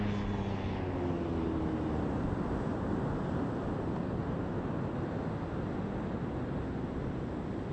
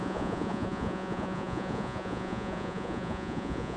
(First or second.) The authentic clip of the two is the first